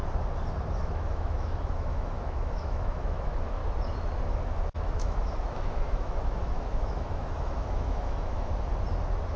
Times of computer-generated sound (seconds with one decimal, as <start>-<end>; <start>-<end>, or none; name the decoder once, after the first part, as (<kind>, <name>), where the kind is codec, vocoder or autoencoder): 0.7-3.6 (autoencoder, DAC-VAE); 4.2-8.5